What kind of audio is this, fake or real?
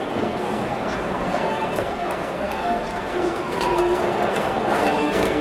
fake